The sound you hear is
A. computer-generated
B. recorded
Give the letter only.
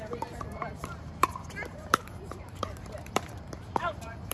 A